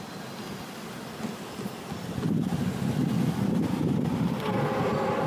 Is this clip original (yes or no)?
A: yes